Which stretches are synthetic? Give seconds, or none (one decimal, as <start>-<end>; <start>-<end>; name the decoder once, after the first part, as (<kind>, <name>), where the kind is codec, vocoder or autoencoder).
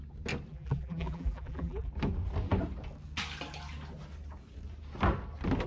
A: 0.5-1.9 (vocoder, BigVGAN v2)